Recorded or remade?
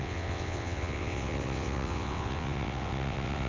remade